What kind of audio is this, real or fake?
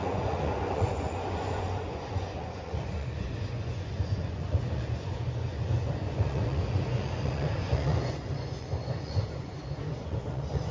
fake